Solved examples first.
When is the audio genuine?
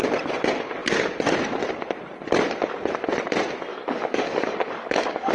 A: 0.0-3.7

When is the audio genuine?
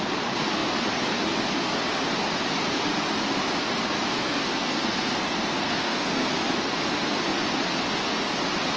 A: 0.0-4.1; 6.3-8.8